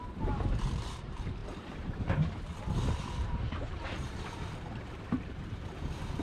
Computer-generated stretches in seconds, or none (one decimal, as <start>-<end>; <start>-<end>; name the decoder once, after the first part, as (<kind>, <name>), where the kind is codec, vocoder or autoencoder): 0.0-6.2 (vocoder, BigVGAN v2)